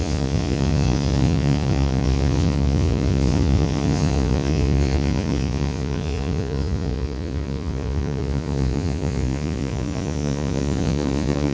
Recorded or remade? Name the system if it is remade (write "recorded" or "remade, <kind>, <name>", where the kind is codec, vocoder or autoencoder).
remade, vocoder, Vocos